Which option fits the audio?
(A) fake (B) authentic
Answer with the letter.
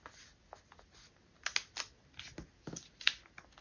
B